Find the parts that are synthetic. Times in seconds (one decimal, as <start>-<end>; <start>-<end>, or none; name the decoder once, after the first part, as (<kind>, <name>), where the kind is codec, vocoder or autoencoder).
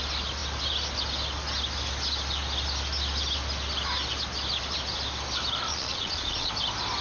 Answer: 5.7-6.5 (vocoder, Vocos)